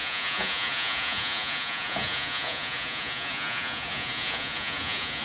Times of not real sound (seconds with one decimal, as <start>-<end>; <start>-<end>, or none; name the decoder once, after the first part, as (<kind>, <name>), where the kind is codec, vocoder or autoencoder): 0.0-5.2 (vocoder, Vocos)